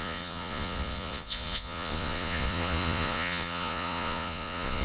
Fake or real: fake